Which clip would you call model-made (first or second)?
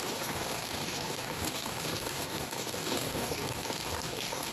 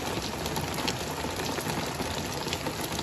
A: first